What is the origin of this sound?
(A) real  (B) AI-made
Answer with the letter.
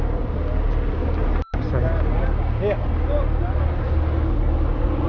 A